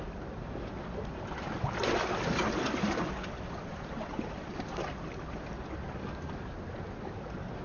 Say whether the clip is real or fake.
real